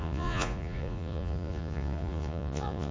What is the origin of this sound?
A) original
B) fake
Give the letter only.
B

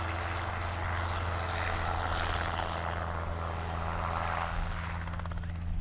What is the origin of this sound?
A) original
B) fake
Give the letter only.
A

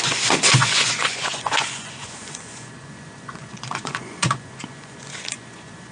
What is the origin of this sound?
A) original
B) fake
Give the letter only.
B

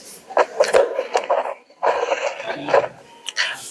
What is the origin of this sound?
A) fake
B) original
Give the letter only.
B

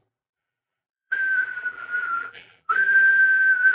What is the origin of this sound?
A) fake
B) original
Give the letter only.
A